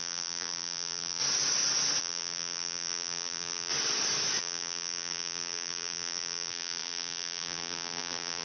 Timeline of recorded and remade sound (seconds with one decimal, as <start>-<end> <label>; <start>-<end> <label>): 0.0-1.2 remade; 1.2-2.0 recorded; 2.0-3.7 remade; 3.7-4.4 recorded; 4.4-8.4 remade